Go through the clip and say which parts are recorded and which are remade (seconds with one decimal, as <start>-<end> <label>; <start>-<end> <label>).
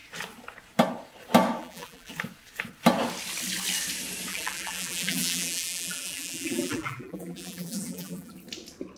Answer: 0.0-1.6 recorded; 1.6-2.1 remade; 2.1-4.3 recorded; 4.3-8.3 remade; 8.3-9.0 recorded